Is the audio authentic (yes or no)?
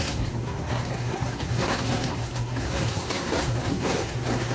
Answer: no